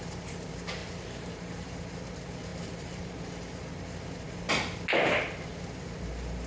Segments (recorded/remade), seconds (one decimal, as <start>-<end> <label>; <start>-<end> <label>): 0.0-0.8 recorded; 0.8-1.8 remade; 1.8-2.5 recorded; 2.5-3.4 remade; 3.4-6.5 recorded